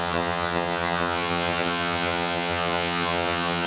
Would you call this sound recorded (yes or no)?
no